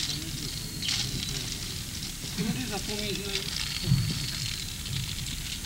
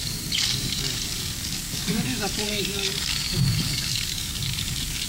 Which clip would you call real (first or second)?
first